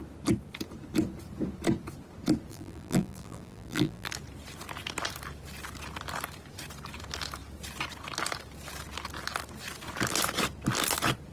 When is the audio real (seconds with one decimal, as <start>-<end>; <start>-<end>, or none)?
0.0-2.5; 4.1-11.3